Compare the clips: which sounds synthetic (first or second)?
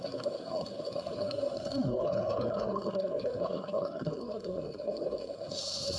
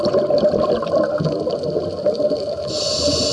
first